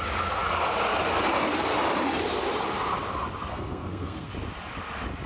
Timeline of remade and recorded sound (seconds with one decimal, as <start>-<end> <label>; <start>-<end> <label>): 0.0-3.5 recorded; 3.5-4.3 remade; 4.3-5.3 recorded